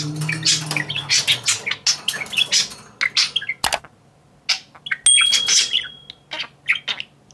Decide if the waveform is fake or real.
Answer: real